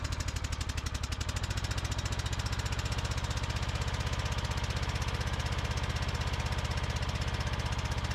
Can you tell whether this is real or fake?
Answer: real